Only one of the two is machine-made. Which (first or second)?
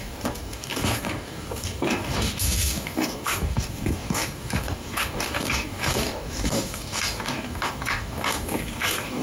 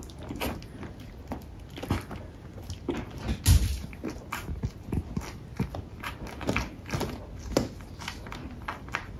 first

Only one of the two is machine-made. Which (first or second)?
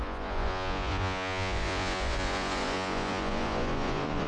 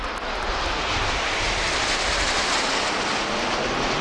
first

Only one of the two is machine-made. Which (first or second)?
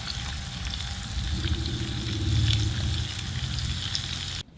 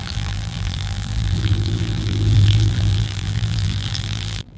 second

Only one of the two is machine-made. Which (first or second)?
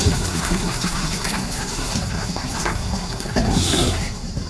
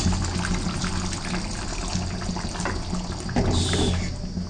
first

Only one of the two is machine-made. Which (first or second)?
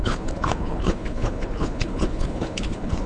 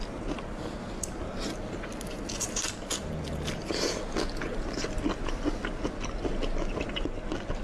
first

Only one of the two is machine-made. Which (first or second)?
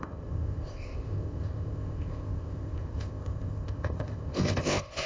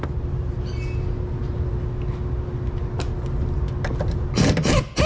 first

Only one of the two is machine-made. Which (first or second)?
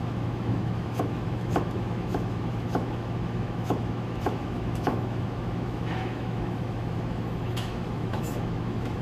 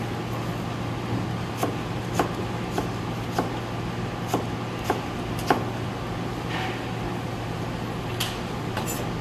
first